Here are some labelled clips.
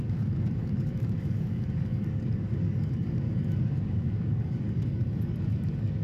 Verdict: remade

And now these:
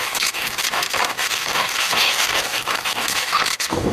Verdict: remade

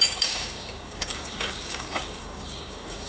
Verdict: remade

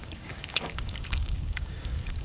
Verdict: remade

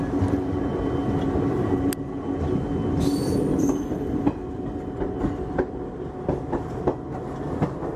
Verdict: recorded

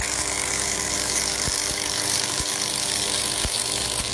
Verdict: remade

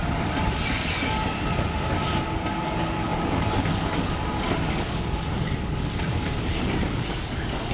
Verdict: remade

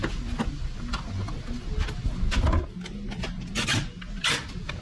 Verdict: recorded